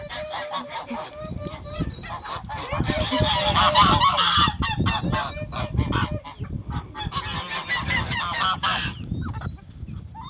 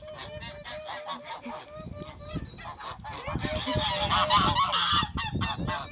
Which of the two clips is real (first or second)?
second